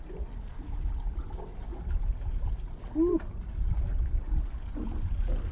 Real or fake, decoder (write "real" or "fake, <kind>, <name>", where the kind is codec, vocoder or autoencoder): real